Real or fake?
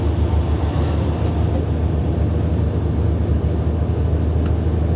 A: real